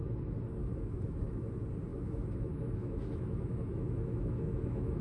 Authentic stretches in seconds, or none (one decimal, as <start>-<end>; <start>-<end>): 0.0-0.6; 1.5-1.9